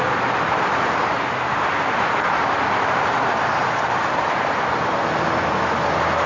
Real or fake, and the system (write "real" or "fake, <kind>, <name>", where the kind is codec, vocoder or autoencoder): real